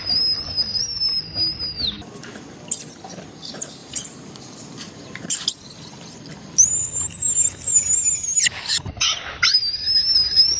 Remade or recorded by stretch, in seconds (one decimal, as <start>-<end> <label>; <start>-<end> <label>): 0.0-3.8 recorded; 3.8-7.0 remade; 7.0-10.6 recorded